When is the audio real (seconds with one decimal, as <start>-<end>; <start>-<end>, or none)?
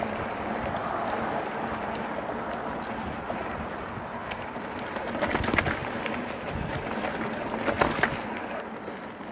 0.0-3.4; 5.0-9.3